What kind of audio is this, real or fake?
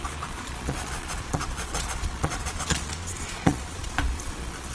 fake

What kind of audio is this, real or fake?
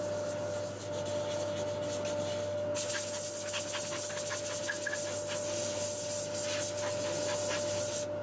real